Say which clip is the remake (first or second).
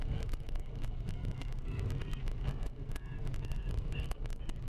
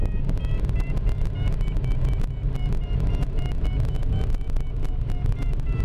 first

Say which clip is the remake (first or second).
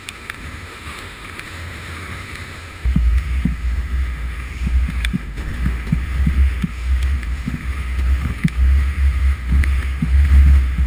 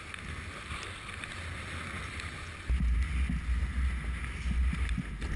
first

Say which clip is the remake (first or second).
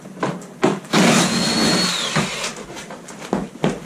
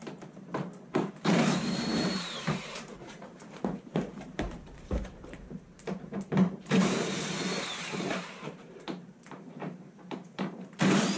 second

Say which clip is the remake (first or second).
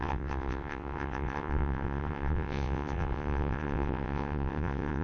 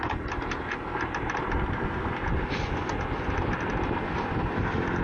first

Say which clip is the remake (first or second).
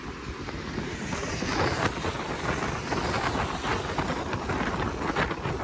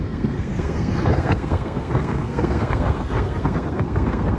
second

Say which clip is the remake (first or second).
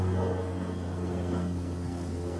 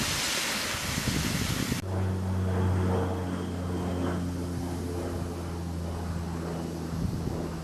first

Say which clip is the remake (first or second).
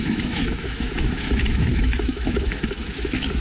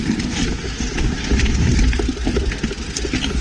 first